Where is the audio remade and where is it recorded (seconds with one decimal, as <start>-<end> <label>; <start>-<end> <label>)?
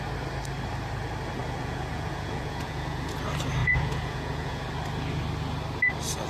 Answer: 0.0-1.4 recorded; 1.4-3.1 remade; 3.1-3.6 recorded; 3.6-4.7 remade; 4.7-6.3 recorded